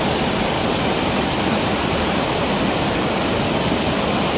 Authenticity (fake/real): real